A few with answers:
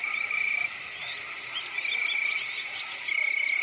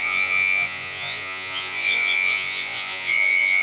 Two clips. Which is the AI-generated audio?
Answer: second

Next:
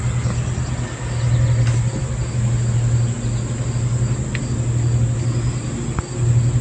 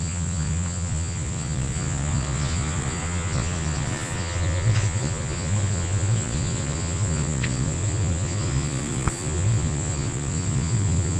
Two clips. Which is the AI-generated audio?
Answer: second